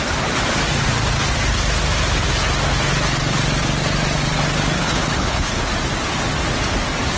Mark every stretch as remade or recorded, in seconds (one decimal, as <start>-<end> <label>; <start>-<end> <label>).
0.0-4.8 recorded; 4.8-5.7 remade; 5.7-7.2 recorded

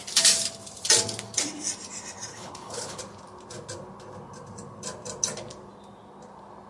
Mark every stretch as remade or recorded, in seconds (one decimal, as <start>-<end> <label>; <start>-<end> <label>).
0.0-2.3 recorded; 2.3-3.0 remade; 3.0-6.7 recorded

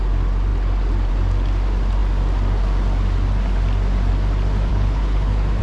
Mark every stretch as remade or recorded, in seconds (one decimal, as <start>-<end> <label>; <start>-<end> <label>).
0.0-4.7 recorded; 4.7-5.6 remade

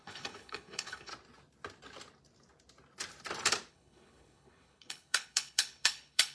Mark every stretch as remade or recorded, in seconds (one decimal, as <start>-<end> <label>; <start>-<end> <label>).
0.0-1.1 remade; 1.1-3.7 recorded; 3.7-6.3 remade

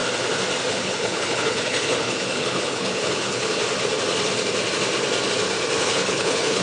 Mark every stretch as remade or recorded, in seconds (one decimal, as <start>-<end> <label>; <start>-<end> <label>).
0.0-0.7 recorded; 0.7-3.6 remade; 3.6-5.8 recorded; 5.8-6.6 remade